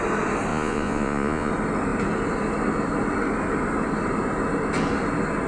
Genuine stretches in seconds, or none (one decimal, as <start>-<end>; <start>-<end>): 0.0-0.5; 1.5-5.5